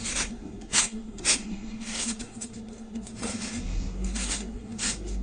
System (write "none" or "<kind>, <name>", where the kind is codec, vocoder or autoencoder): codec, SNAC